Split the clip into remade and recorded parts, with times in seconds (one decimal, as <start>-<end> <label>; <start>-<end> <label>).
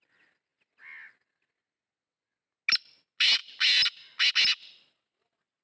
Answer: 0.0-5.6 recorded